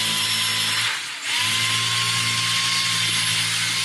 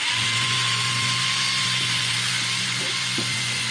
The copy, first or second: second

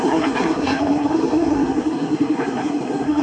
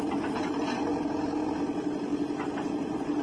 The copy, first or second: first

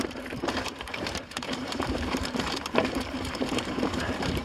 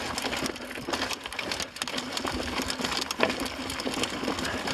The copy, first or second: first